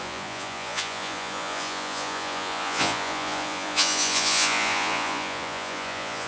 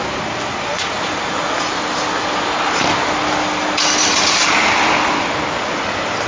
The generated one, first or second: first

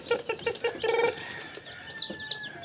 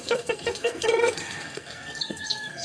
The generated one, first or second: second